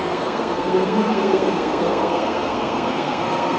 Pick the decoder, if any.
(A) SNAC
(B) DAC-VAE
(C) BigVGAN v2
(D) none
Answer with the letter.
A